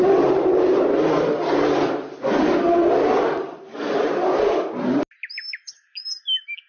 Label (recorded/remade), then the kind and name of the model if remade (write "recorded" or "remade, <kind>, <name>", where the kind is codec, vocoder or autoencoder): recorded